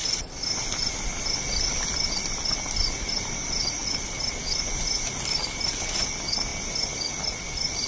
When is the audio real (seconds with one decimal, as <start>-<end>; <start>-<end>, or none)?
0.0-7.9